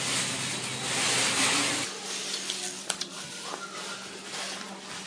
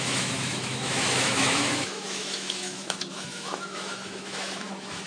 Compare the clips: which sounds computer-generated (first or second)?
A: second